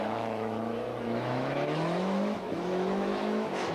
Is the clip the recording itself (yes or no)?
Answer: no